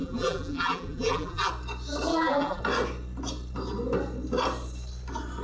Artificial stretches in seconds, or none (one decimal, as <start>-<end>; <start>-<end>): 0.0-1.5; 2.1-2.6